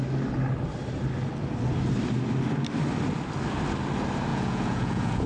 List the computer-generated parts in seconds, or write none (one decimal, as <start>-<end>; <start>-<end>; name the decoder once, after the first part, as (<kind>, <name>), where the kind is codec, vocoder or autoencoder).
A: 4.3-5.3 (vocoder, Vocos)